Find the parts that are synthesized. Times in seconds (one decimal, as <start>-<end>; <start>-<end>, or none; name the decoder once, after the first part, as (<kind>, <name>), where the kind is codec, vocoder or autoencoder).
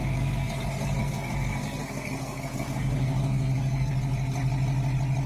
0.0-0.5 (codec, SNAC); 1.0-3.9